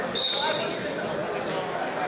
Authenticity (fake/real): real